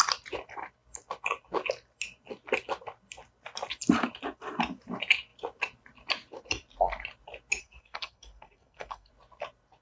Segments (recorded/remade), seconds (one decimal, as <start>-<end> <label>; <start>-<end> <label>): 0.0-7.6 recorded; 7.6-9.1 remade; 9.1-9.8 recorded